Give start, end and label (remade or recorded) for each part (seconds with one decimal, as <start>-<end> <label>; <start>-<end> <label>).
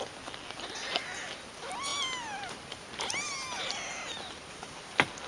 0.0-5.3 recorded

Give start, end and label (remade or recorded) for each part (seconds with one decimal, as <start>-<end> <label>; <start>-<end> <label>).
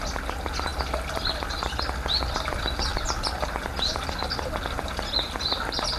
0.0-0.7 recorded; 0.7-1.3 remade; 1.3-2.9 recorded; 2.9-3.5 remade; 3.5-6.0 recorded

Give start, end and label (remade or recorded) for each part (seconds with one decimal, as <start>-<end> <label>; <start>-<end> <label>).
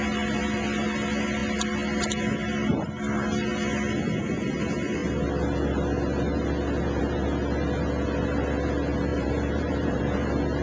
0.0-9.1 recorded; 9.1-10.0 remade; 10.0-10.6 recorded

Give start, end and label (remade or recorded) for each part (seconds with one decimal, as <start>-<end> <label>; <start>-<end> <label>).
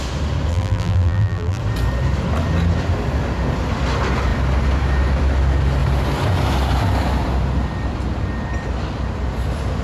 0.0-0.5 recorded; 0.5-1.6 remade; 1.6-9.8 recorded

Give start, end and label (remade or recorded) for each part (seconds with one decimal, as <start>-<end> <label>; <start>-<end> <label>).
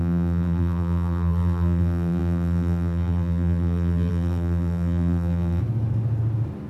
0.0-5.6 remade; 5.6-6.7 recorded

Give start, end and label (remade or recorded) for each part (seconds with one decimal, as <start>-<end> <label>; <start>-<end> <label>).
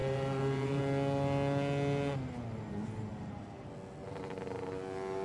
0.0-0.8 remade; 0.8-3.1 recorded; 3.1-3.7 remade; 3.7-5.2 recorded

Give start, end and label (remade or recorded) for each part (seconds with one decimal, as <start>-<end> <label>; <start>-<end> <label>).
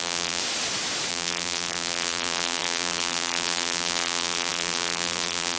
0.0-0.4 remade; 0.4-1.1 recorded; 1.1-5.6 remade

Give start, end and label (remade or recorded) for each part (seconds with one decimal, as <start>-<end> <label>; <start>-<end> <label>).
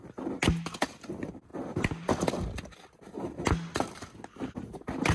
0.0-1.5 recorded; 1.5-2.3 remade; 2.3-5.1 recorded